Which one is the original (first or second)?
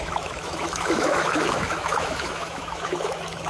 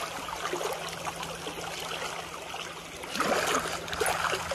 second